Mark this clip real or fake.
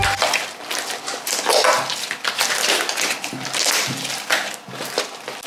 real